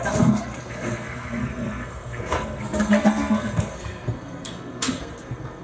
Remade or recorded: remade